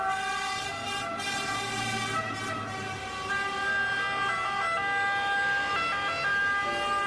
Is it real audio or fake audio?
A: real